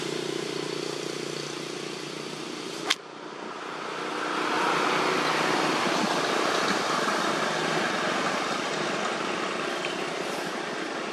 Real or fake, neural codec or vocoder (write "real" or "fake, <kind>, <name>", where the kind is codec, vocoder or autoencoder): real